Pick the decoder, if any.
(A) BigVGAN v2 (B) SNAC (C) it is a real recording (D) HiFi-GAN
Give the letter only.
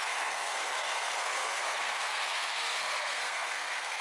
B